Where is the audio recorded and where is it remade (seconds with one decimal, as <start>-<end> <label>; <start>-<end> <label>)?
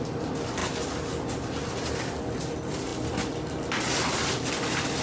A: 0.0-5.0 recorded